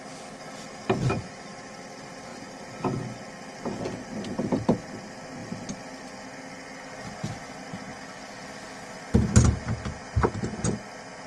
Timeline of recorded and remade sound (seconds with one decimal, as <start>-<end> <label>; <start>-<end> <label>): 0.0-11.3 recorded